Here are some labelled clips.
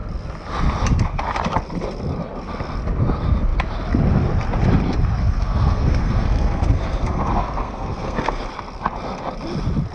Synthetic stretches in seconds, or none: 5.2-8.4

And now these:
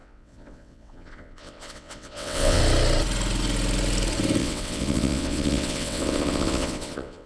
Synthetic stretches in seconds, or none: 0.0-2.6; 4.4-7.3

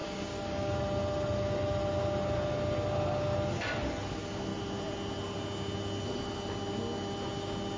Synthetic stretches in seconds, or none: 0.0-0.8

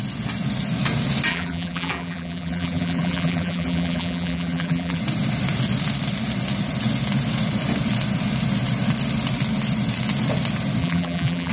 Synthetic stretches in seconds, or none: 1.3-5.0; 10.8-11.5

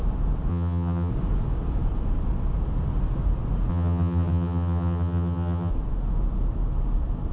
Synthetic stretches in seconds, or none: 0.5-1.1; 3.7-5.7

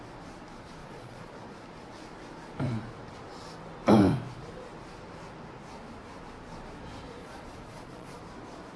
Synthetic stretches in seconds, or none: 0.8-1.3; 7.2-8.2

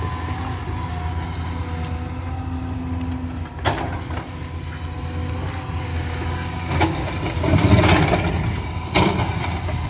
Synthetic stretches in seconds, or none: 5.9-7.1